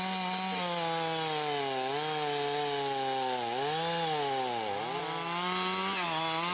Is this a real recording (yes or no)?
yes